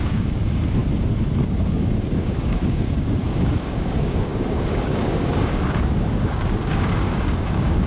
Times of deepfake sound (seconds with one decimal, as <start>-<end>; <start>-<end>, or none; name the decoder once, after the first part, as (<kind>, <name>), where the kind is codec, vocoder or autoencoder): 0.0-0.8 (codec, DAC); 1.5-7.9